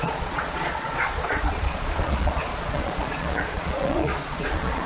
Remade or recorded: remade